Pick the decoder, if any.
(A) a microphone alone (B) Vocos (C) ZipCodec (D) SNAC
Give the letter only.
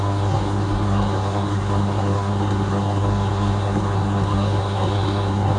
D